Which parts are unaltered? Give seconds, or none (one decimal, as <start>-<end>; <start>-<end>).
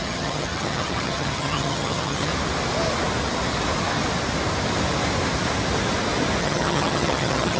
2.3-6.4